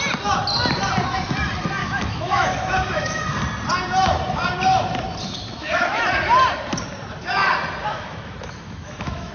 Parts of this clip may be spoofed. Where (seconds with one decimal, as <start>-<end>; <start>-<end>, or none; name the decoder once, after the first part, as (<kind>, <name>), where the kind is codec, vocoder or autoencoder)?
1.8-3.2 (autoencoder, DAC-VAE); 5.2-6.0; 7.9-9.3